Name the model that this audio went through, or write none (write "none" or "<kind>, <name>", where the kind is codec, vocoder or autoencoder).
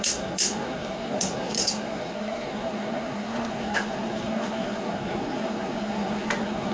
codec, SNAC